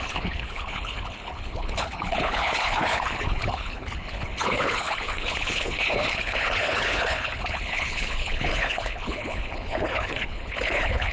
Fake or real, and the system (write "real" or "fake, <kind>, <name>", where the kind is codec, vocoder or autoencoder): fake, codec, HILCodec